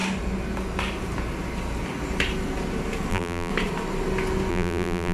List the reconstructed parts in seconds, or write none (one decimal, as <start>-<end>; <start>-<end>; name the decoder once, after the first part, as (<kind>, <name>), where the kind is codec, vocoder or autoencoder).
3.1-3.5 (vocoder, BigVGAN v2); 4.5-5.1